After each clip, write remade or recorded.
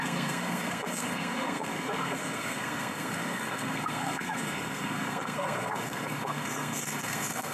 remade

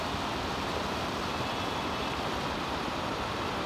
recorded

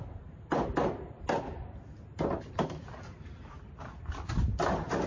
recorded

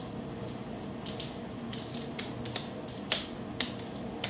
recorded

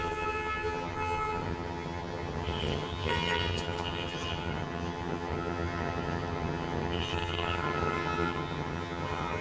remade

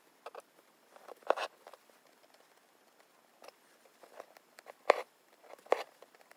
recorded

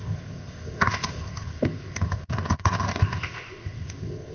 remade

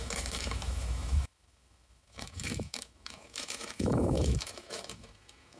remade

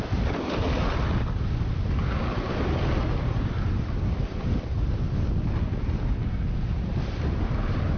recorded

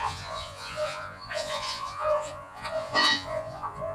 remade